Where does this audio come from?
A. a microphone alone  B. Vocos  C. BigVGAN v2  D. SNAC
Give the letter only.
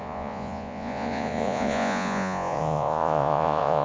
B